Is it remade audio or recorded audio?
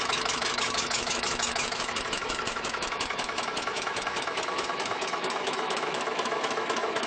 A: remade